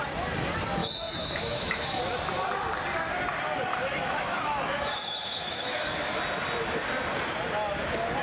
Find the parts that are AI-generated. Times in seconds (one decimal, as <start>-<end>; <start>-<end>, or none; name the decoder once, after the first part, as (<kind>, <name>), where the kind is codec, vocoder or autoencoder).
0.8-2.0 (autoencoder, DAC-VAE); 3.7-6.2